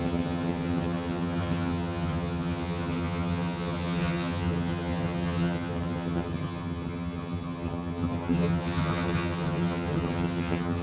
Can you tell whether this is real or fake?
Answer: fake